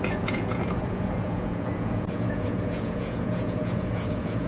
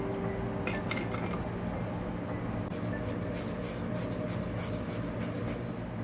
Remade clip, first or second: first